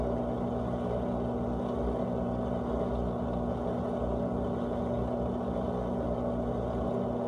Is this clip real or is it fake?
real